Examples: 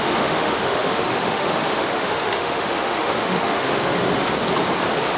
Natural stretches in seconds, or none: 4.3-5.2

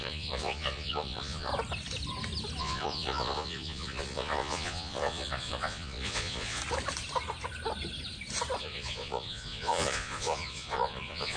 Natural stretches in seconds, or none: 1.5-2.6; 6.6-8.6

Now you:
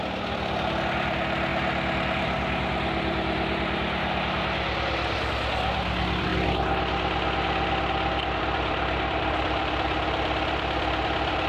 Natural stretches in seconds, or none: 6.3-8.4

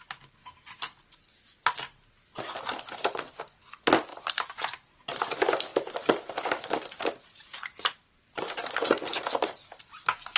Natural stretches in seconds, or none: 0.0-4.1; 5.2-5.7; 8.5-10.4